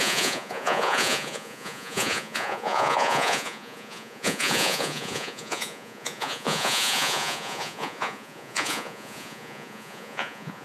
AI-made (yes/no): yes